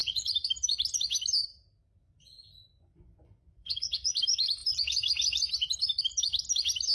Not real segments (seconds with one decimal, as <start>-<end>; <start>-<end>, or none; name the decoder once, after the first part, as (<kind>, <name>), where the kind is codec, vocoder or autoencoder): 0.0-0.5 (vocoder, Vocos); 2.0-4.1